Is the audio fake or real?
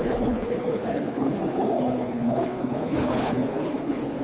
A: fake